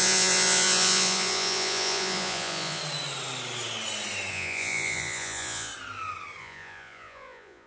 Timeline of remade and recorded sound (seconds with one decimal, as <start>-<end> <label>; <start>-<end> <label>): 0.0-2.8 remade; 2.8-4.3 recorded; 4.3-5.7 remade; 5.7-6.4 recorded; 6.4-7.7 remade